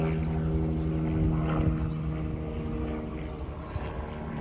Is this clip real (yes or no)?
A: yes